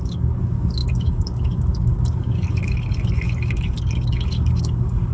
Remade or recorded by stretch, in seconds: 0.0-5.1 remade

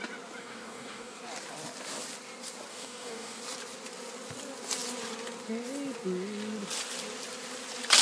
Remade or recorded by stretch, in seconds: 0.0-0.4 recorded; 0.4-1.2 remade; 1.2-2.7 recorded; 2.7-3.4 remade; 3.4-8.0 recorded

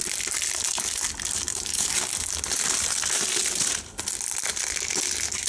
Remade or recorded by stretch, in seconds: 0.0-1.5 recorded; 1.5-2.1 remade; 2.1-5.5 recorded

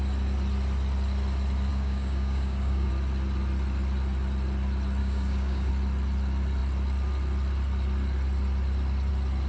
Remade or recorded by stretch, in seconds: 0.0-1.7 recorded; 1.7-2.9 remade; 2.9-5.0 recorded; 5.0-5.7 remade; 5.7-9.5 recorded

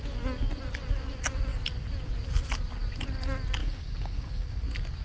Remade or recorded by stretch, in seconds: 0.0-3.6 recorded; 3.6-4.6 remade; 4.6-5.0 recorded

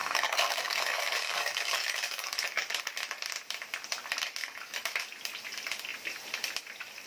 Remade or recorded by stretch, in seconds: 0.0-2.8 remade; 2.8-4.4 recorded; 4.4-5.0 remade; 5.0-7.1 recorded

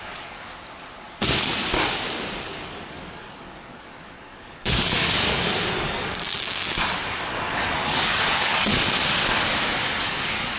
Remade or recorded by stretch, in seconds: 0.0-0.5 remade; 0.5-2.4 recorded; 2.4-8.7 remade; 8.7-10.0 recorded; 10.0-10.6 remade

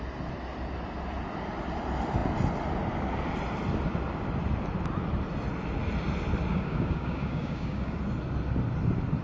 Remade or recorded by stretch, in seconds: 0.0-6.5 recorded; 6.5-8.0 remade; 8.0-9.2 recorded